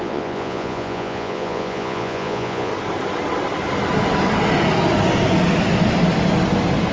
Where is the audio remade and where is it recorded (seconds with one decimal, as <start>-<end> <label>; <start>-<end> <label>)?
0.0-2.7 remade; 2.7-6.9 recorded